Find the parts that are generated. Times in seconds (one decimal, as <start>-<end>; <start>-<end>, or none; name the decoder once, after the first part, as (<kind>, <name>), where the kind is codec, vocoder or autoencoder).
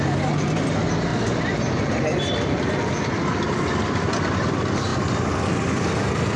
none